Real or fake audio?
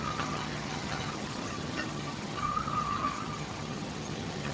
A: fake